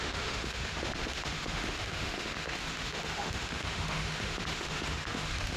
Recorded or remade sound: remade